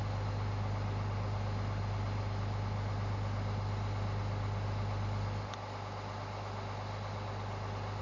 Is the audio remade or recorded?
recorded